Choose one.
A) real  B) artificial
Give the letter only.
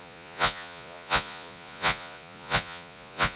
B